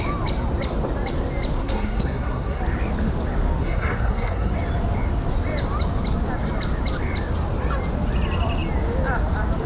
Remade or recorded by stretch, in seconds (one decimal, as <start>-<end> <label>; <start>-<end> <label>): 0.0-1.6 recorded; 1.6-2.6 remade; 2.6-3.6 recorded; 3.6-4.5 remade; 4.5-9.7 recorded